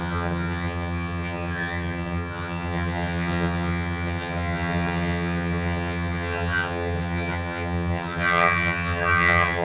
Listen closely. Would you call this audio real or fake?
fake